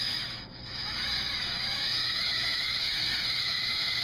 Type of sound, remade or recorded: remade